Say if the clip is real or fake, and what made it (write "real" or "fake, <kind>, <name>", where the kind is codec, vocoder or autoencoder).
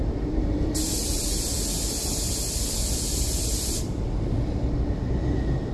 real